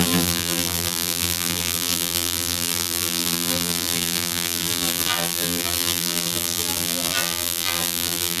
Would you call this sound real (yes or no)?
no